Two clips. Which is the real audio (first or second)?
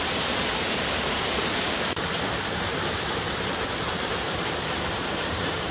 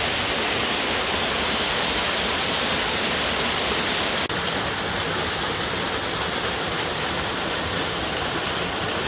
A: second